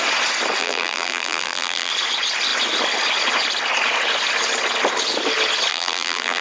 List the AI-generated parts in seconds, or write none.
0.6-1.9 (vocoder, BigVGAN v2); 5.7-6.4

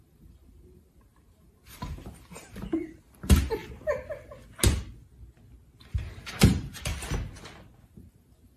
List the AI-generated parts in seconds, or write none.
0.0-3.6 (vocoder, BigVGAN v2); 5.8-6.9; 7.8-8.6

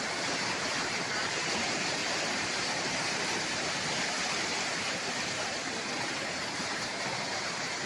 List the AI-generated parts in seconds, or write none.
0.0-7.9 (vocoder, BigVGAN v2)

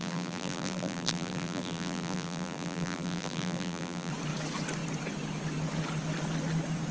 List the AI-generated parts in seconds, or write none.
0.0-4.1 (vocoder, BigVGAN v2)

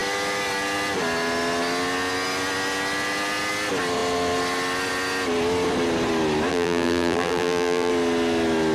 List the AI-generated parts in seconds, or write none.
6.5-7.9 (vocoder, BigVGAN v2)

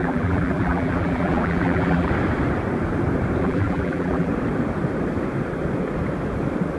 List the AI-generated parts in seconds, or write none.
0.0-2.1 (vocoder, BigVGAN v2); 3.4-4.3

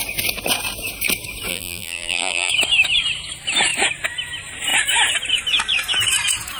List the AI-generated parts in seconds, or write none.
1.5-2.5 (vocoder, BigVGAN v2)